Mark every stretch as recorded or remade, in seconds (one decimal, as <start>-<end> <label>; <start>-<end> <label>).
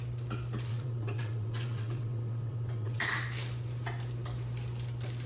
0.0-0.7 recorded; 0.7-3.0 remade; 3.0-5.3 recorded